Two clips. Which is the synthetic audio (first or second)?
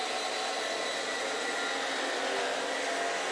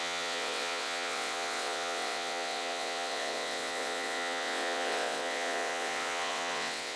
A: second